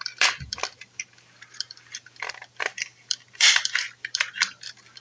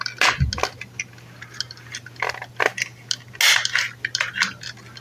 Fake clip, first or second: first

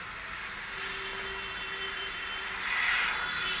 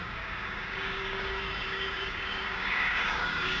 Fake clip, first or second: second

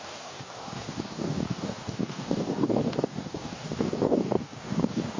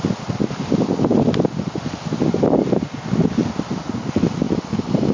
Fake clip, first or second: first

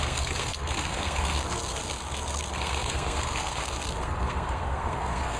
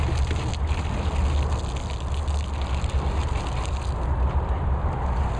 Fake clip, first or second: first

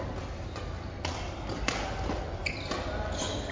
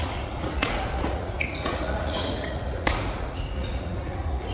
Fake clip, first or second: second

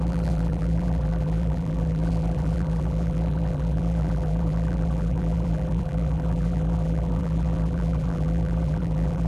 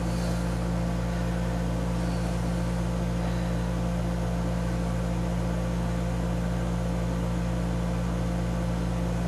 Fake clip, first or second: first